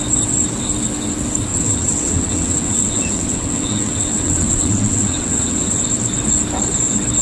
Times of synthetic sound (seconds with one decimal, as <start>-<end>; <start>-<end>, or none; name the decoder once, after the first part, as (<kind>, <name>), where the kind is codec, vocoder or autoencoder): 1.5-5.8 (vocoder, WaveNeXt)